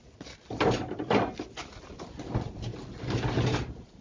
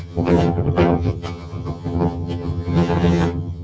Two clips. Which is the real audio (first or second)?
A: first